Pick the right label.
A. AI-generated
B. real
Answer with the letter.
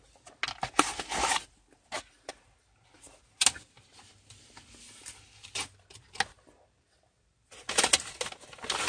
B